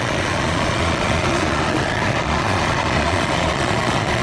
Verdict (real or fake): fake